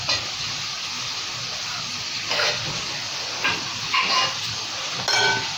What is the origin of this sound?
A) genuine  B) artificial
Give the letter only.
A